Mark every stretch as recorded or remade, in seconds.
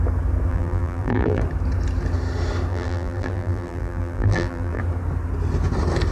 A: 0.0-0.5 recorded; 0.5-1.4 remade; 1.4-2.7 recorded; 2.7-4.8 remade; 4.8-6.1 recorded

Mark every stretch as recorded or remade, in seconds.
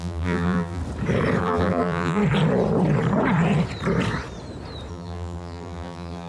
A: 0.0-0.8 remade; 0.8-1.4 recorded; 1.4-2.2 remade; 2.2-4.9 recorded; 4.9-6.3 remade